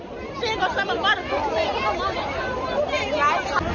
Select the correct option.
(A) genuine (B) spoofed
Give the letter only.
A